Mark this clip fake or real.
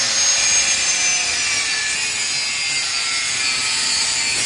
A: real